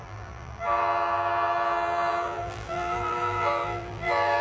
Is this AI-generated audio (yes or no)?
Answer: yes